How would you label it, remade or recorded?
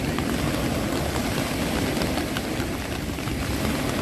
recorded